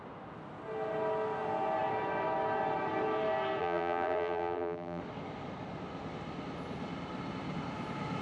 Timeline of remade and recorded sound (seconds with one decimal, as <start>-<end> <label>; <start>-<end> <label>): 0.0-3.6 recorded; 3.6-5.0 remade; 5.0-8.2 recorded